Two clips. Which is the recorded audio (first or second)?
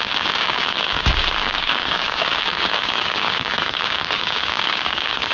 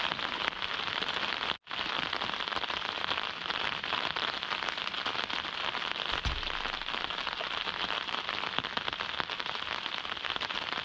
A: second